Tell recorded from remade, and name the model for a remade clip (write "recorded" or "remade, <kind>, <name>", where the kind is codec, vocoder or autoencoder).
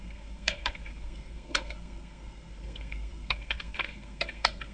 remade, codec, SNAC